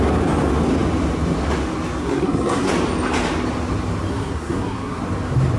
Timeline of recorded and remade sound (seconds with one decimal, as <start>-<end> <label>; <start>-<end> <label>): 0.0-2.0 recorded; 2.0-2.7 remade; 2.7-4.1 recorded; 4.1-5.0 remade; 5.0-5.6 recorded